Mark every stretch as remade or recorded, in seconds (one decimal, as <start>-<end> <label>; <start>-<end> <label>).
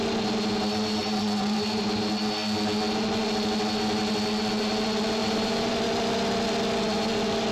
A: 0.0-1.0 recorded; 1.0-1.8 remade; 1.8-5.2 recorded; 5.2-5.8 remade; 5.8-7.5 recorded